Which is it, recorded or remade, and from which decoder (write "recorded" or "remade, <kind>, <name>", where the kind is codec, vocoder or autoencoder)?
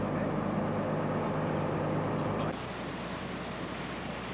recorded